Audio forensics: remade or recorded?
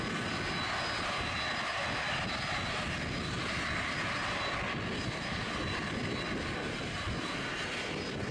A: recorded